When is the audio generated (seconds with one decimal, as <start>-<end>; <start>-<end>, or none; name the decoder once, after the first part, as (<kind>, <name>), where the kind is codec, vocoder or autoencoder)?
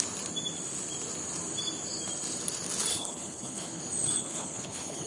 2.9-3.8 (codec, HILCodec); 4.2-5.1